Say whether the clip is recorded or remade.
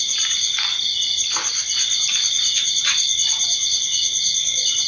recorded